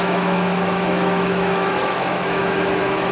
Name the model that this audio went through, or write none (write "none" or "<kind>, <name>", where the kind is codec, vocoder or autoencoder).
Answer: autoencoder, DAC-VAE